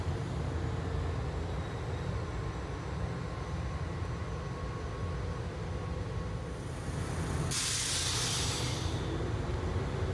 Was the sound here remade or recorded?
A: recorded